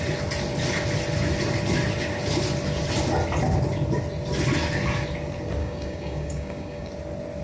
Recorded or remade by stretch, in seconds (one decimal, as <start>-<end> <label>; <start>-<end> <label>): 0.0-5.6 recorded; 5.6-6.9 remade; 6.9-7.4 recorded

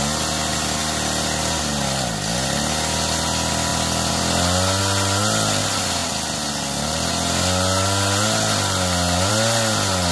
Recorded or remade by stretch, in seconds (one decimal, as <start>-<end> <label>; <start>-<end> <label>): 0.0-10.1 recorded

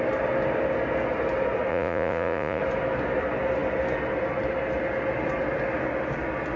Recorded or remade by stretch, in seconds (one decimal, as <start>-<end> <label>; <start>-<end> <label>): 0.0-1.7 recorded; 1.7-2.6 remade; 2.6-6.6 recorded

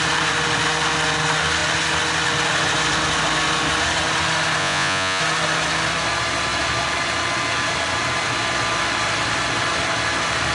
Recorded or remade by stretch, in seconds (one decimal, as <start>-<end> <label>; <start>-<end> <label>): 0.0-4.6 recorded; 4.6-5.2 remade; 5.2-10.5 recorded

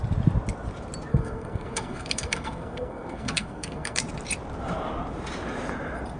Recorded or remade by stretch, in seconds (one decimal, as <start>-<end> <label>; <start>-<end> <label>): 0.0-1.1 recorded; 1.1-4.0 remade; 4.0-6.2 recorded